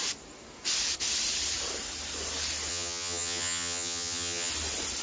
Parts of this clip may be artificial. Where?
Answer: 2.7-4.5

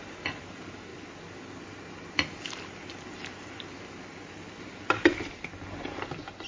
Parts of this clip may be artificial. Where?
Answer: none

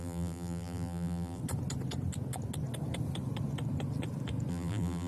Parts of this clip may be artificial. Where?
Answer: 0.0-1.4; 4.5-5.1